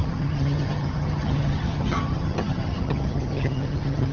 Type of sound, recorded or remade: remade